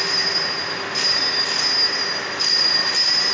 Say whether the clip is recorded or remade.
recorded